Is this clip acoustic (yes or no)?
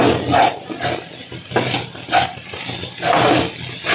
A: yes